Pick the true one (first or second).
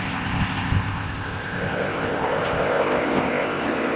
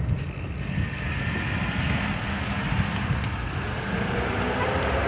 second